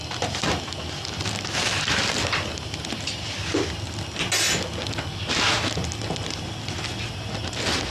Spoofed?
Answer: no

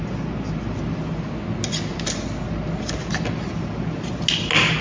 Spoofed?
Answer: no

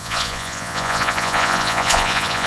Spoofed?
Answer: yes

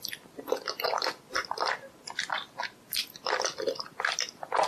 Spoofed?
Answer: no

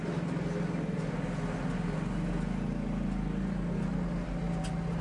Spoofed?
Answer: no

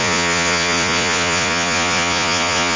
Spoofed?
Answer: yes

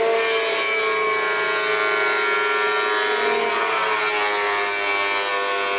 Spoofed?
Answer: no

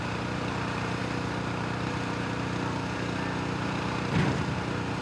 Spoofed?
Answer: yes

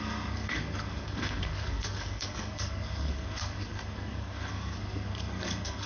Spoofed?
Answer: yes